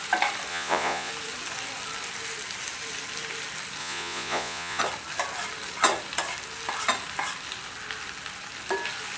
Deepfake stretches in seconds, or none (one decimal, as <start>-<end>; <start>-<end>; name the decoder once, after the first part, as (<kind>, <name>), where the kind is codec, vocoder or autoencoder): 0.5-1.1 (vocoder, Vocos); 3.8-4.8